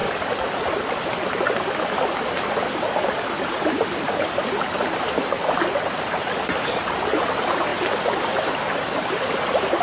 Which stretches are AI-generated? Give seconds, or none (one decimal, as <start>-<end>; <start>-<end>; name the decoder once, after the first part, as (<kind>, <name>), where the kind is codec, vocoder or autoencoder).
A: 7.7-9.8 (vocoder, BigVGAN v2)